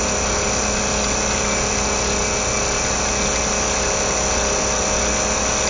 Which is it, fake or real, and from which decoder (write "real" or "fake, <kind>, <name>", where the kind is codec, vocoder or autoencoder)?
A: real